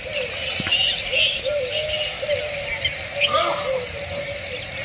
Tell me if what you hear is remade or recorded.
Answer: recorded